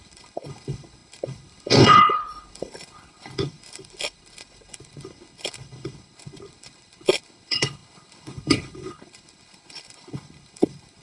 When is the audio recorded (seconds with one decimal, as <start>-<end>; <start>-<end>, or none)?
none